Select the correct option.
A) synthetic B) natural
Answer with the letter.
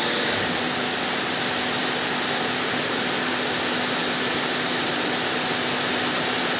B